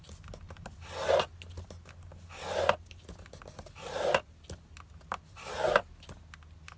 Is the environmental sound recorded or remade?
recorded